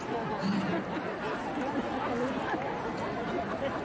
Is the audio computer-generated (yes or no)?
no